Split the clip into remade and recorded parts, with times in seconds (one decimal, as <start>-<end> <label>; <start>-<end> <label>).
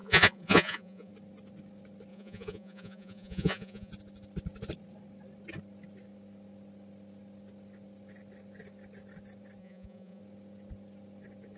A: 0.0-1.1 remade; 1.1-2.1 recorded; 2.1-3.9 remade; 3.9-9.6 recorded; 9.6-10.2 remade; 10.2-11.6 recorded